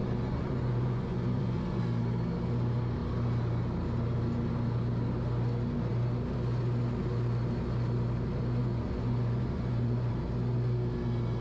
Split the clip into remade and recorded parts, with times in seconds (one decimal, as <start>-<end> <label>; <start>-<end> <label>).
0.0-1.8 remade; 1.8-8.6 recorded; 8.6-10.1 remade; 10.1-11.4 recorded